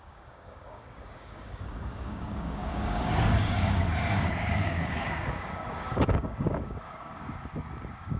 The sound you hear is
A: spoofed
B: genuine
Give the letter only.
A